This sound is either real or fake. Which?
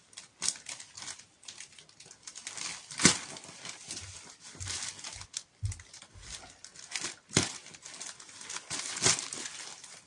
real